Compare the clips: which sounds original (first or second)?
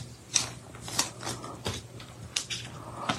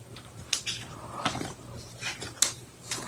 first